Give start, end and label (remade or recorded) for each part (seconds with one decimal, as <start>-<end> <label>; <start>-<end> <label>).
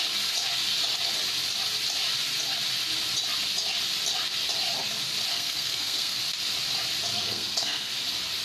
0.0-5.3 recorded; 5.3-6.2 remade; 6.2-7.1 recorded; 7.1-7.9 remade; 7.9-8.4 recorded